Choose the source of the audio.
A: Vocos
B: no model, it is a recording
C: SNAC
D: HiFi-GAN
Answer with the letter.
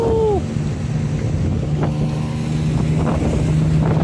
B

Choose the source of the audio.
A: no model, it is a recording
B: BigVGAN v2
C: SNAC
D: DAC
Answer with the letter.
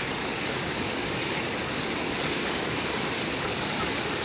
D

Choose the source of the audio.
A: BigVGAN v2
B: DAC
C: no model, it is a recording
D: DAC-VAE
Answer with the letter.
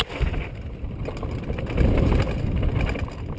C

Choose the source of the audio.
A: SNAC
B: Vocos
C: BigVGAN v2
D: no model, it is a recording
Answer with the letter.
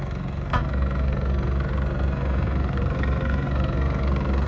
A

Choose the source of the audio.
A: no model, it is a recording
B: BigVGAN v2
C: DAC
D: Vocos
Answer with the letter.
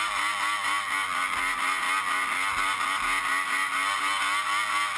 A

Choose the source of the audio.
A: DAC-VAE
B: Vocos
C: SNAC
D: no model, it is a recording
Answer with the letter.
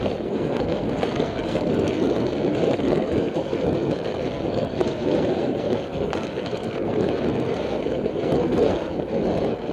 C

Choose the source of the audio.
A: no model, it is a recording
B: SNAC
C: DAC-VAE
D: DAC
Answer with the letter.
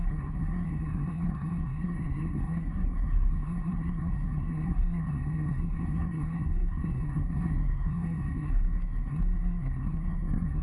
B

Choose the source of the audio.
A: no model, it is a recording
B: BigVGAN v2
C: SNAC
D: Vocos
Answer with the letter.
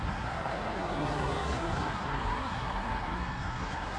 C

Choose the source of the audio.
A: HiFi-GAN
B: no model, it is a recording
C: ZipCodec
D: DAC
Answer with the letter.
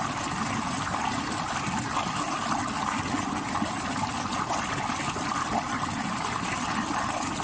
B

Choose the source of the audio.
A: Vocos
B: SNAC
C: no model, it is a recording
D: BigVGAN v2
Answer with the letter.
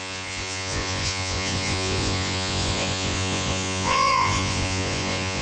A